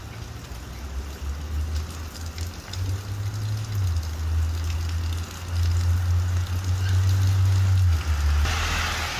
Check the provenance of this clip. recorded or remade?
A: recorded